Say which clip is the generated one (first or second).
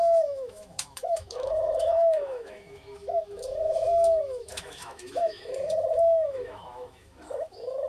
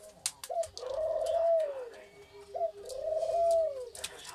first